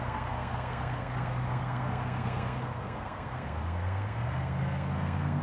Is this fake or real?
fake